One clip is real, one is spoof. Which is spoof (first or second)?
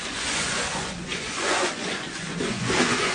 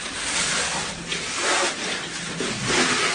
first